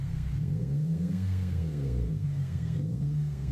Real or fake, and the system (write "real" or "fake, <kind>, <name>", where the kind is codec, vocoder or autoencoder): fake, codec, SNAC